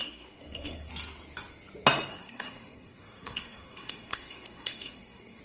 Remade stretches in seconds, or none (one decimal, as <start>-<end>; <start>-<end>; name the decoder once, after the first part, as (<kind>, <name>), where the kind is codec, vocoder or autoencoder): 0.0-0.9 (codec, SNAC); 2.1-5.4